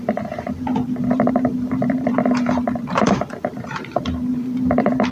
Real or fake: fake